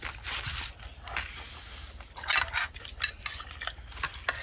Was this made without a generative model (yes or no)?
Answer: yes